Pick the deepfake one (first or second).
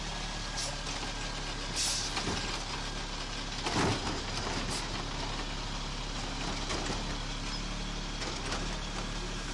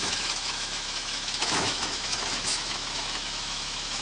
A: second